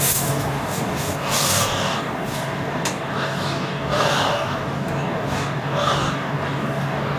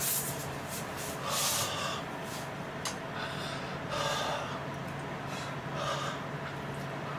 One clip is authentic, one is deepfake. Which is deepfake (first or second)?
first